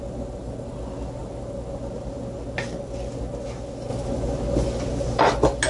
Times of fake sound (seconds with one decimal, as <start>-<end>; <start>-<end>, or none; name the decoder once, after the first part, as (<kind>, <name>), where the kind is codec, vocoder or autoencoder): none